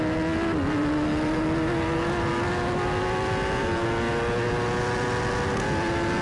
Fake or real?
real